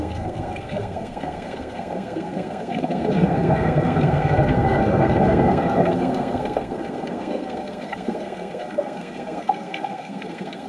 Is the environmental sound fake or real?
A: fake